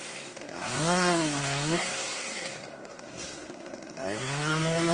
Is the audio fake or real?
fake